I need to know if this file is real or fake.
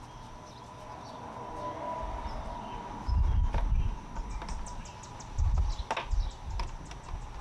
real